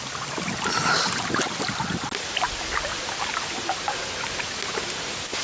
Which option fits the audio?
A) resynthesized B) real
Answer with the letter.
B